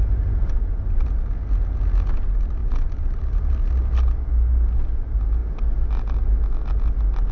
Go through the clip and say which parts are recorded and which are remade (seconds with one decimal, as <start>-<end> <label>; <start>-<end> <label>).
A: 0.0-0.4 recorded; 0.4-1.3 remade; 1.3-2.6 recorded; 2.6-3.5 remade; 3.5-7.3 recorded